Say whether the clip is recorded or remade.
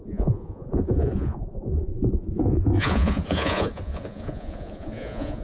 remade